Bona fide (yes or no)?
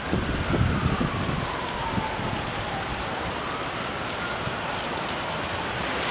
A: yes